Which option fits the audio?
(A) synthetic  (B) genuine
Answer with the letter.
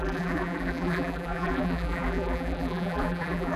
A